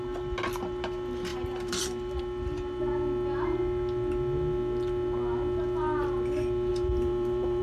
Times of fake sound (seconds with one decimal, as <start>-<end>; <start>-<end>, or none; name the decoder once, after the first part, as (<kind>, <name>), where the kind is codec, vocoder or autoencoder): 1.3-2.2 (vocoder, BigVGAN v2); 6.7-7.6